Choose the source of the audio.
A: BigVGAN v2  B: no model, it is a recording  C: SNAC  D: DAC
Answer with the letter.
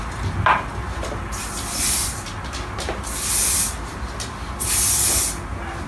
B